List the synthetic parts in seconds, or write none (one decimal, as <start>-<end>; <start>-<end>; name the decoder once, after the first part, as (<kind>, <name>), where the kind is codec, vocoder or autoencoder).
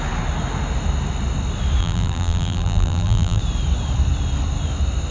1.8-3.4 (vocoder, BigVGAN v2)